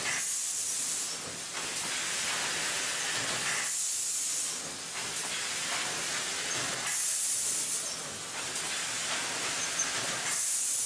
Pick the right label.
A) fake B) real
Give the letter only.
B